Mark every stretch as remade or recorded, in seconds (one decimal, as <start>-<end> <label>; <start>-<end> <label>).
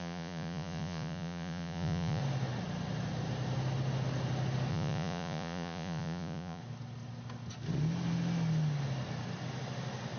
0.0-2.2 remade; 2.2-4.7 recorded; 4.7-6.6 remade; 6.6-10.2 recorded